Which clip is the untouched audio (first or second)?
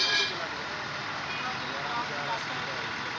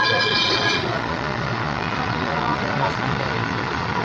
first